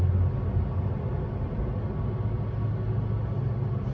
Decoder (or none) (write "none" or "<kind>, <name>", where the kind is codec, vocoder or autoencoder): none